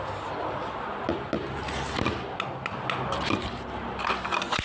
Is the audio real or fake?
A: real